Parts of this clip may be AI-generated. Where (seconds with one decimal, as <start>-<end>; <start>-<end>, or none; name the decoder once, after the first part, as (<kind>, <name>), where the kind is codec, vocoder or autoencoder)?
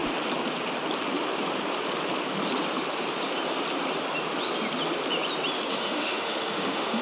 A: 5.7-7.0 (autoencoder, DAC-VAE)